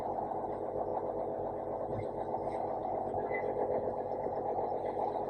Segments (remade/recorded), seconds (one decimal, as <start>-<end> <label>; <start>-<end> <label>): 0.0-5.3 recorded